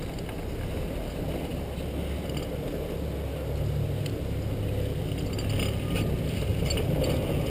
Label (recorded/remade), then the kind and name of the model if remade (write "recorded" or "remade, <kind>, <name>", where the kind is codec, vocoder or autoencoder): recorded